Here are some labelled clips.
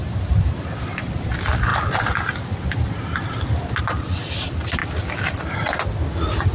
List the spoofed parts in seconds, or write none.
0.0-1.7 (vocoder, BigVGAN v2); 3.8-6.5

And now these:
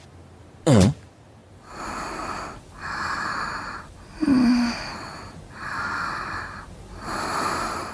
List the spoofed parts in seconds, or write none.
none

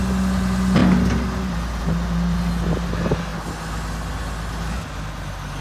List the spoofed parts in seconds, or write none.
none

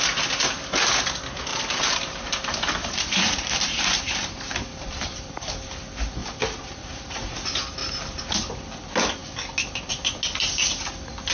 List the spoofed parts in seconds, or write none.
1.5-5.5 (vocoder, BigVGAN v2); 6.2-7.2; 7.8-8.3

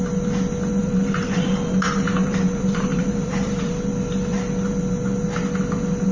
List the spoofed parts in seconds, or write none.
0.8-3.7 (vocoder, BigVGAN v2)

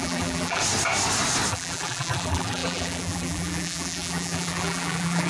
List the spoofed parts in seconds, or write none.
0.0-0.6 (vocoder, BigVGAN v2); 1.5-5.3